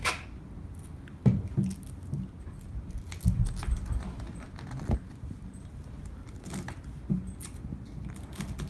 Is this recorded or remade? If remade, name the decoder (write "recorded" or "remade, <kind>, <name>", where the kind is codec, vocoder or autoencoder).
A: recorded